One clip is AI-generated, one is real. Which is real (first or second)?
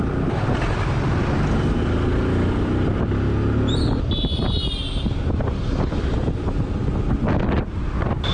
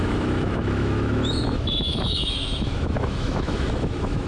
first